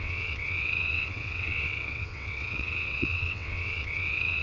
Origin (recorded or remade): remade